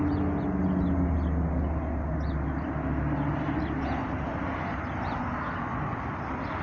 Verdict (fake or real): real